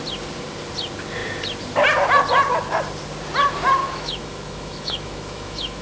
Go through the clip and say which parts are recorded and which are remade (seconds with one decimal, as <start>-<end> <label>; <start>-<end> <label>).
0.0-3.8 recorded; 3.8-5.8 remade